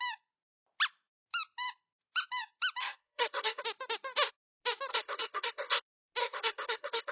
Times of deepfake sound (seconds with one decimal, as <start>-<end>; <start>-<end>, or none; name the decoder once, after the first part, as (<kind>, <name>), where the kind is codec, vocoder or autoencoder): 2.8-3.6 (codec, SNAC); 4.9-5.8; 6.2-7.1